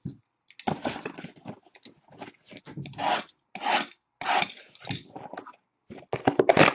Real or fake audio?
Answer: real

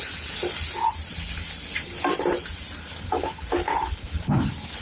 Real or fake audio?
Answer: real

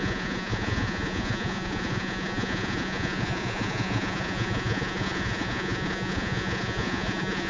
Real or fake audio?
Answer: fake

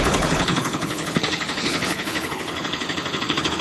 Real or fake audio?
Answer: fake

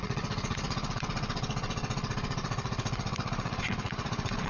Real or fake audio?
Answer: fake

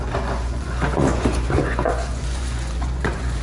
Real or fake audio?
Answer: fake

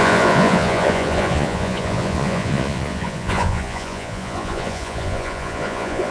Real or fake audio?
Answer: fake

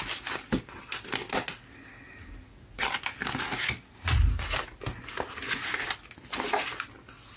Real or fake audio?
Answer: real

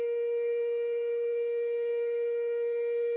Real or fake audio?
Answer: fake